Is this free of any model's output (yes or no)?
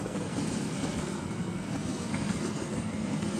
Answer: no